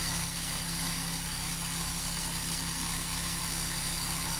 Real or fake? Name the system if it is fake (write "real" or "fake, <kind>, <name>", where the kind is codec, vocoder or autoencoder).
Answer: fake, codec, SNAC